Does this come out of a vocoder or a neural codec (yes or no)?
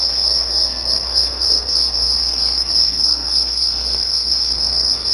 yes